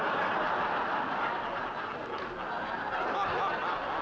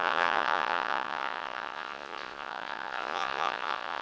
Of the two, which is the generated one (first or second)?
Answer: second